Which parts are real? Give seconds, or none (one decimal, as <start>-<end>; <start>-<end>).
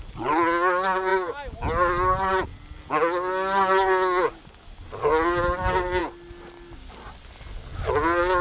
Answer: 0.0-8.4